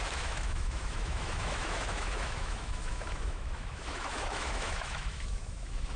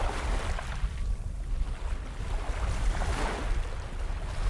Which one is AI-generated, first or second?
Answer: first